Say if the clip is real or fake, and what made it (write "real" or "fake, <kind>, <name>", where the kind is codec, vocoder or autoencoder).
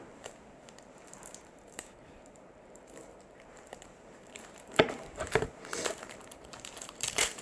fake, vocoder, BigVGAN v2